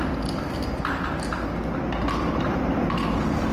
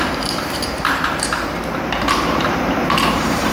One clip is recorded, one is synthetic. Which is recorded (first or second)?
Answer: first